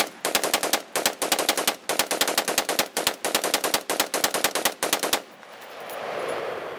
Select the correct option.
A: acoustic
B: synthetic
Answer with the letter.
A